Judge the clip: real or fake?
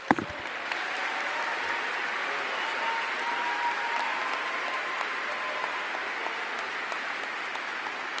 real